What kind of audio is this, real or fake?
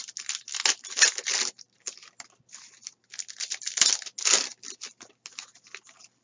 real